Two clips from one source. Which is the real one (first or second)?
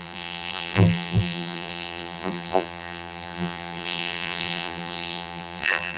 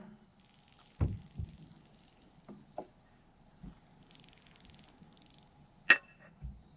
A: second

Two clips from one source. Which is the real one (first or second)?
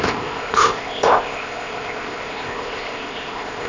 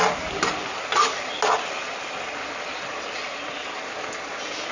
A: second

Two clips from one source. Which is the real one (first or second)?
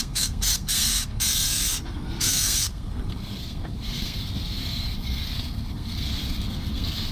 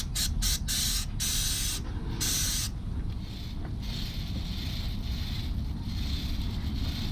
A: second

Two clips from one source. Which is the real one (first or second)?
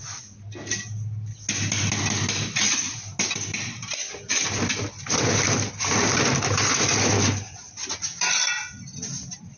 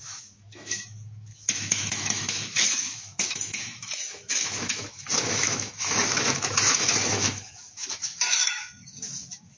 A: first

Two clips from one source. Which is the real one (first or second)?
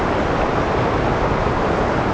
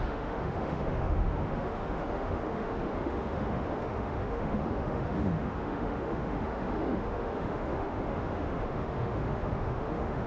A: first